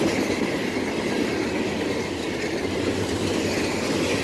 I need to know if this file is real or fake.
real